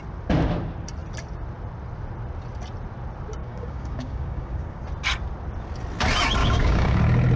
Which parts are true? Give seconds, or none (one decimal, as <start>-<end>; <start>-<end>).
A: 0.0-3.4; 4.8-6.4; 7.0-7.4